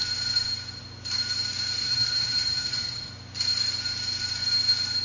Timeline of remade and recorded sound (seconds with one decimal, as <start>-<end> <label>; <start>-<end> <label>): 0.0-1.8 recorded; 1.8-3.1 remade; 3.1-5.0 recorded